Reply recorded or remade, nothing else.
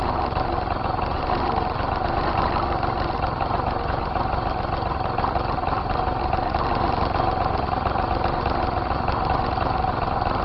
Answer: recorded